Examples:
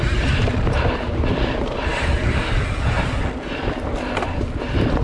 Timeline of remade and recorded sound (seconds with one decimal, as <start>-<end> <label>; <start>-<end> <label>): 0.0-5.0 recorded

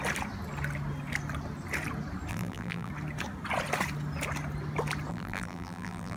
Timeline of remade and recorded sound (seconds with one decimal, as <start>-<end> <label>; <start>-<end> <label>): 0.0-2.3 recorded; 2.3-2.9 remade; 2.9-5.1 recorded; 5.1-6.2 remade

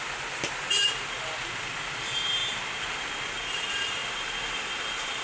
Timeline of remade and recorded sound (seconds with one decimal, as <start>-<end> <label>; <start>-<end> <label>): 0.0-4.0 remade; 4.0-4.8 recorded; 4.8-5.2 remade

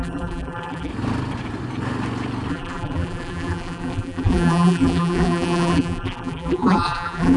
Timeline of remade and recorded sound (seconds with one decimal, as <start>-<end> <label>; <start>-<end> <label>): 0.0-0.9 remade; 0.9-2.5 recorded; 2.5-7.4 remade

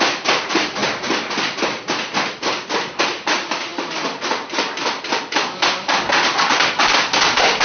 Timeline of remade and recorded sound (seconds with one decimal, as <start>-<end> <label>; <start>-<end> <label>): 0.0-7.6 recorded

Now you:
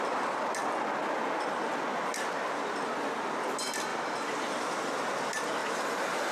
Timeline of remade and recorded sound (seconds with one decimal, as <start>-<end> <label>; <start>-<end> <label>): 0.0-3.9 recorded; 3.9-4.8 remade; 4.8-6.3 recorded

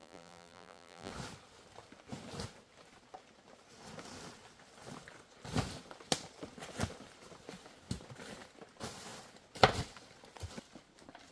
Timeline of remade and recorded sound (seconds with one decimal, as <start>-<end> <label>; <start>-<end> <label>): 0.0-1.1 remade; 1.1-11.3 recorded